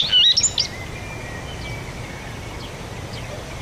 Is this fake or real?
real